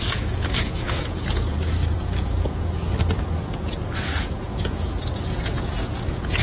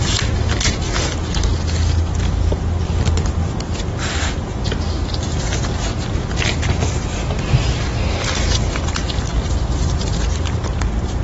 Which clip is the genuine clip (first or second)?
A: second